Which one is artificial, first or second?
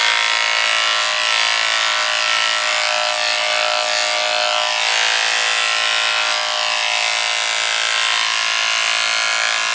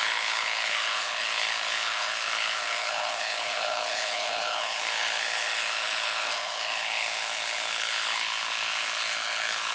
second